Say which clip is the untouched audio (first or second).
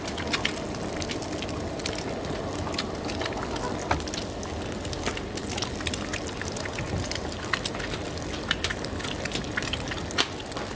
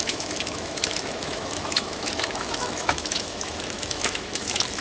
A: first